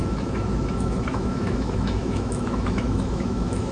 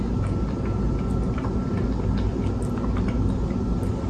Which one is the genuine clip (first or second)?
second